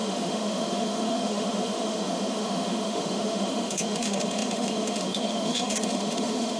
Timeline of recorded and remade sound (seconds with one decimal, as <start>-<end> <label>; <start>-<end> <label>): 0.0-6.6 remade